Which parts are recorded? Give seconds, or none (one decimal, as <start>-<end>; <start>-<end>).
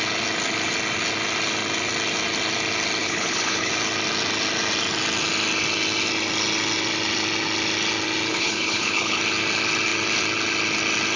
0.0-3.0; 3.7-8.3; 9.2-11.2